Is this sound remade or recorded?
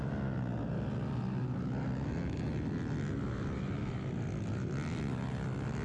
recorded